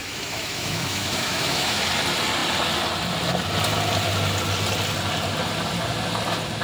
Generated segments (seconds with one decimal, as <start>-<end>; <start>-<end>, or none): 0.0-1.8